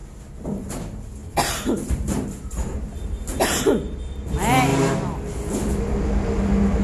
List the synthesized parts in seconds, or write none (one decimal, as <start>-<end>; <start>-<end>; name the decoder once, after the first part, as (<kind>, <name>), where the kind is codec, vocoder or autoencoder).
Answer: 1.2-3.6 (vocoder, BigVGAN v2)